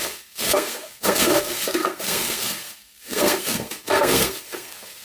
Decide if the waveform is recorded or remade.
remade